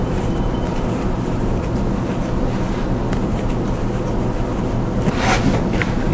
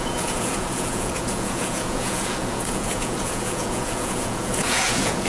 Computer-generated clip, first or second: second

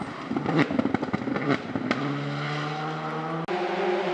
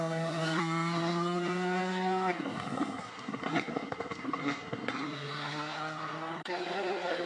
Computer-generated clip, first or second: second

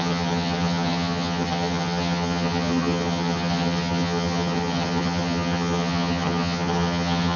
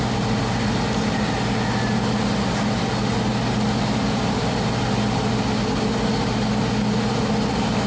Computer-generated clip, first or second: first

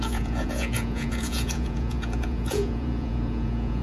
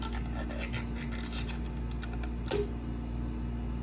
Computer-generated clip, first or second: first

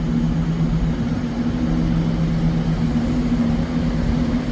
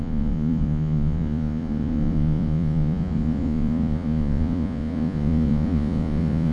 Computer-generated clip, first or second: second